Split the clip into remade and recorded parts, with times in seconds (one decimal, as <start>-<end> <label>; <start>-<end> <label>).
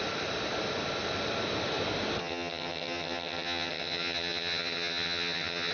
0.0-2.2 recorded; 2.2-5.7 remade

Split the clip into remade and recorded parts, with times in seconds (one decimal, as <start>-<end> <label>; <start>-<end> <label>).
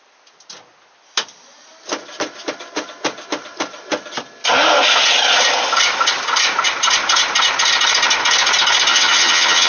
0.0-8.9 recorded; 8.9-9.7 remade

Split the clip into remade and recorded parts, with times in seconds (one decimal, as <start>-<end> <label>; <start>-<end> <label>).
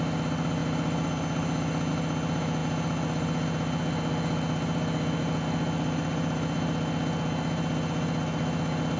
0.0-9.0 recorded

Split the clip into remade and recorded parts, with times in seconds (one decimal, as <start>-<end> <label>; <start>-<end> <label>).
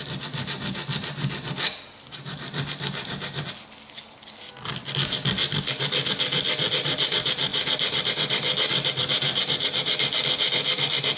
0.0-11.2 recorded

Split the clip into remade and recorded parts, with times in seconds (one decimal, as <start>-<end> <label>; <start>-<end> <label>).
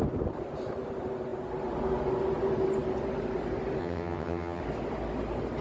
0.0-3.8 recorded; 3.8-4.6 remade; 4.6-5.6 recorded